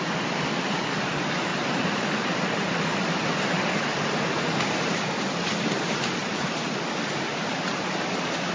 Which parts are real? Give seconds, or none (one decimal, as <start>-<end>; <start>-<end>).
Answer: 0.0-1.5; 5.2-7.3